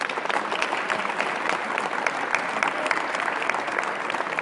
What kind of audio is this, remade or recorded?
recorded